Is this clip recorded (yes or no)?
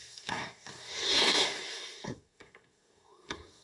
no